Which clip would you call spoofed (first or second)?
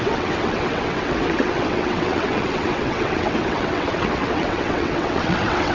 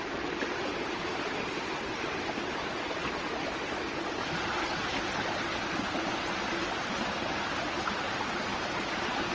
first